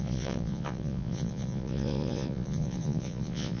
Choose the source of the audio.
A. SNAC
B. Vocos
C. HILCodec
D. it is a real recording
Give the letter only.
B